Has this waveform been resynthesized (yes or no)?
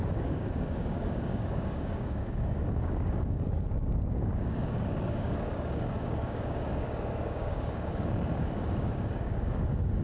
yes